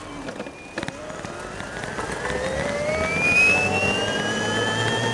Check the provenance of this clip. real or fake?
real